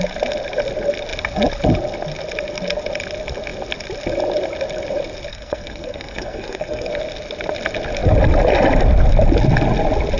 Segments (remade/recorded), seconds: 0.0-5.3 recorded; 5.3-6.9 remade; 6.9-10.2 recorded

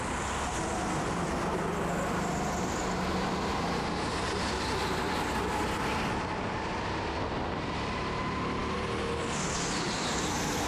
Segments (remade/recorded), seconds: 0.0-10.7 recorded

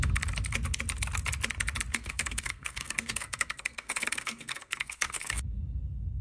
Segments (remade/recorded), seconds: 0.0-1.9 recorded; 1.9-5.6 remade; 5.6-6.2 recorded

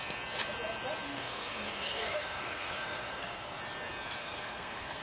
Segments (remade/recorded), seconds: 0.0-1.1 recorded; 1.1-3.6 remade; 3.6-4.2 recorded; 4.2-5.0 remade

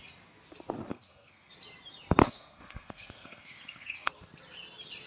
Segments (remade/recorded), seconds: 0.0-0.9 recorded; 0.9-1.5 remade; 1.5-2.2 recorded; 2.2-4.1 remade; 4.1-5.1 recorded